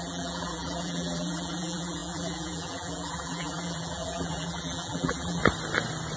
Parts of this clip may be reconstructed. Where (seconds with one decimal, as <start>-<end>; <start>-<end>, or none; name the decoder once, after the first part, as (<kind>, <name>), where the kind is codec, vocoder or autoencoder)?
0.0-5.4 (vocoder, BigVGAN v2)